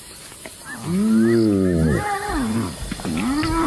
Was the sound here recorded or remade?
recorded